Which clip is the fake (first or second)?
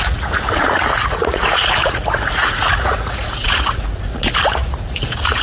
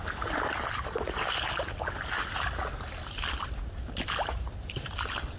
first